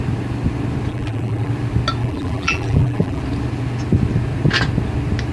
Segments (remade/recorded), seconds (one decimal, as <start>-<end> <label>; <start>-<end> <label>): 0.0-0.9 recorded; 0.9-1.5 remade; 1.5-2.0 recorded; 2.0-3.2 remade; 3.2-5.3 recorded